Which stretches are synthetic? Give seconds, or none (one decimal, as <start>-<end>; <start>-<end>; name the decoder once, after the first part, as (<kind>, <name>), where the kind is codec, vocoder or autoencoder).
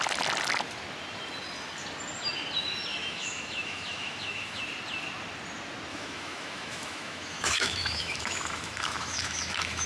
2.9-4.6 (autoencoder, DAC-VAE); 5.9-9.9